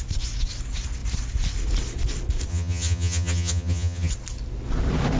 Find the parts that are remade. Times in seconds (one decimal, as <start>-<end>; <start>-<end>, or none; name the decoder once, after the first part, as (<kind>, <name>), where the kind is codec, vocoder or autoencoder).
2.5-4.1 (vocoder, HiFi-GAN)